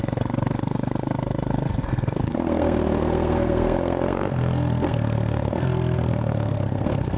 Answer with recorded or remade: remade